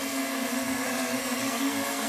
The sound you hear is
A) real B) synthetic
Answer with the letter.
B